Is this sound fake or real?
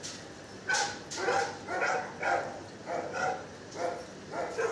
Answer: real